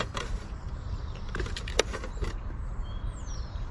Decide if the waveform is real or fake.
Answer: fake